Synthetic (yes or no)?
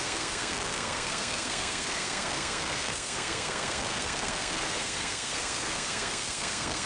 yes